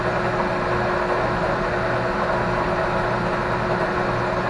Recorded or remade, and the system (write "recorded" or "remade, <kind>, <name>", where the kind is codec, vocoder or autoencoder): recorded